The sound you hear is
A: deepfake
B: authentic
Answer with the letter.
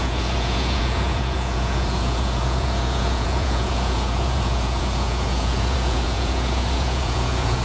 A